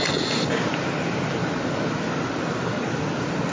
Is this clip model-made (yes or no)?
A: no